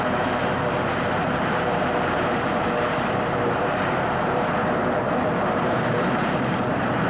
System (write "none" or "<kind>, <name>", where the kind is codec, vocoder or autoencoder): vocoder, BigVGAN v2